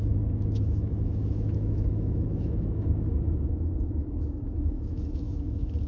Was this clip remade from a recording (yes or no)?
yes